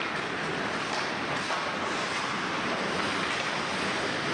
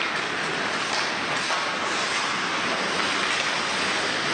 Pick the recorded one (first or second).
second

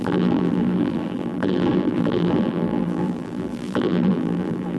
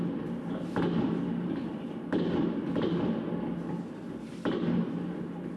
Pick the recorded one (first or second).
second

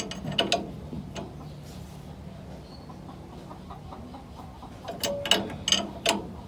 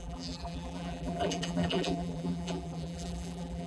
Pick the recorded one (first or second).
first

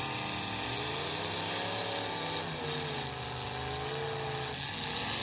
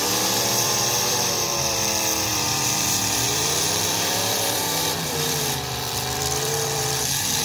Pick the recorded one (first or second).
first